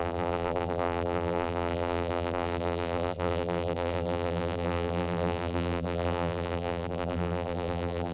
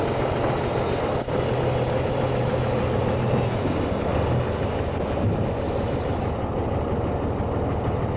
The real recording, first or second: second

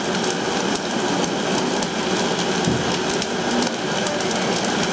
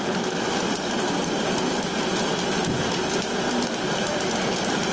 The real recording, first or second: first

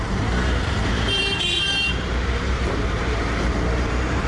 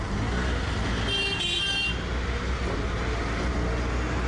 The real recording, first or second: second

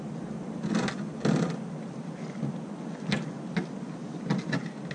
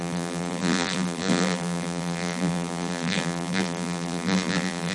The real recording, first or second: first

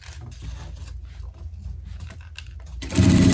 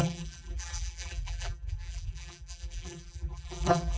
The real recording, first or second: first